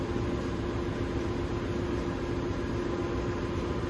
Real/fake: real